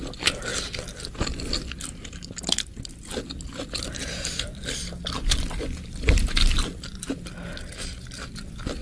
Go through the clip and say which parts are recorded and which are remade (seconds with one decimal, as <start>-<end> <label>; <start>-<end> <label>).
0.0-8.8 recorded